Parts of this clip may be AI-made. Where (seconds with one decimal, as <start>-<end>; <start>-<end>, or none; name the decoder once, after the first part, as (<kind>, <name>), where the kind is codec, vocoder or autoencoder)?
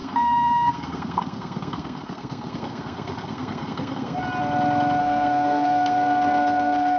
0.0-4.2 (codec, SNAC); 5.0-7.0